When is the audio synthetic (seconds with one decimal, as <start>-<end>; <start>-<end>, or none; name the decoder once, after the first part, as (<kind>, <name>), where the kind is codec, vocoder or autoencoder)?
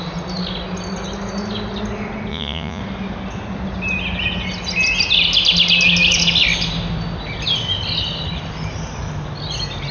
2.3-2.8 (vocoder, Vocos)